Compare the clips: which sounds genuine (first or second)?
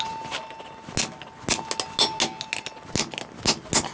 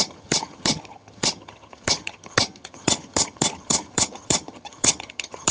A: first